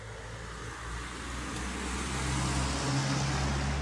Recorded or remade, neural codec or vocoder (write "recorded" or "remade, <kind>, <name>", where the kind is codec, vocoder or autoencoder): recorded